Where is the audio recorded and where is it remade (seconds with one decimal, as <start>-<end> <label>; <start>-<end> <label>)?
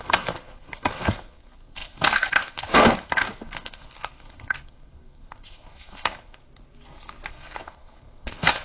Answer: 0.0-6.5 remade; 6.5-7.3 recorded; 7.3-8.6 remade